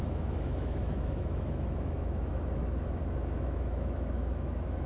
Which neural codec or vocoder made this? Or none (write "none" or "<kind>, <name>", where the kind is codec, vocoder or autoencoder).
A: autoencoder, DAC-VAE